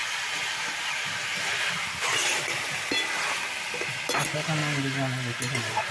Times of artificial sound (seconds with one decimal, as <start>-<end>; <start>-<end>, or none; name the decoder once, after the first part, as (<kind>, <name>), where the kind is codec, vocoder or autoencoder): none